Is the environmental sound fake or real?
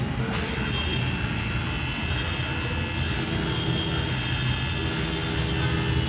real